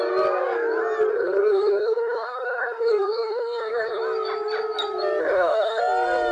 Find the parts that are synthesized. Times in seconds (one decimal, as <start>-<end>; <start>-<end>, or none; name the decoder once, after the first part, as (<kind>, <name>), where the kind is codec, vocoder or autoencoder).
1.1-4.0 (codec, SNAC); 5.2-5.8